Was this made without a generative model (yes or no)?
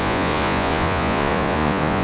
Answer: no